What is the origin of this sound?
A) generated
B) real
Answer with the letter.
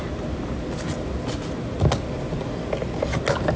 B